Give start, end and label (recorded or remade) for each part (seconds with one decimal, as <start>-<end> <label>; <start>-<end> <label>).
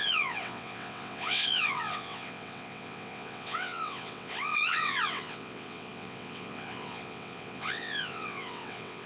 0.0-9.1 remade